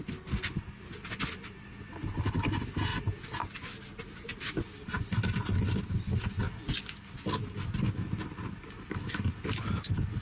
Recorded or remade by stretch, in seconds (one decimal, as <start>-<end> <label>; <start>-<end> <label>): 0.0-10.2 recorded